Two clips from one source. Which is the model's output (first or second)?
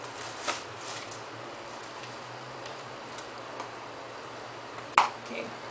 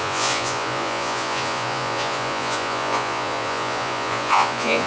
second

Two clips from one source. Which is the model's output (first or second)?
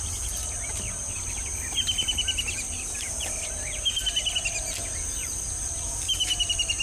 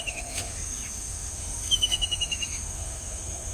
second